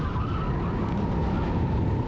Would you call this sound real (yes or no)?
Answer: yes